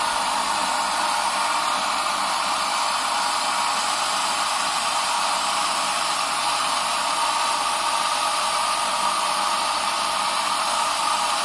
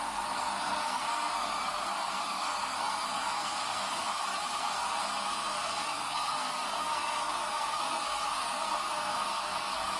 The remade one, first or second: second